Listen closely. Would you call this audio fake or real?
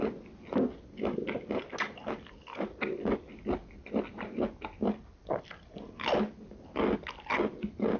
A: real